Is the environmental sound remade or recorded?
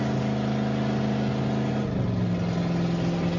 recorded